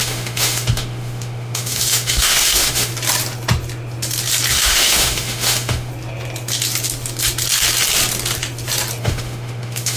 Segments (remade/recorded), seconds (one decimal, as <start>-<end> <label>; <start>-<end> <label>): 0.0-2.9 remade; 2.9-4.5 recorded; 4.5-5.9 remade; 5.9-9.0 recorded; 9.0-10.0 remade